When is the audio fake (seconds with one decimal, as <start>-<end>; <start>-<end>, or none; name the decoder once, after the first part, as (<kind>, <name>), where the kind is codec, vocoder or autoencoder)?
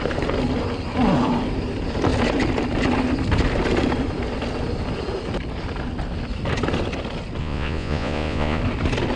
7.4-8.6 (vocoder, Vocos)